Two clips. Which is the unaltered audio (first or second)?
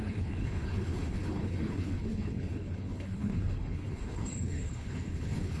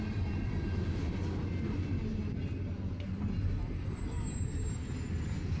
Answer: second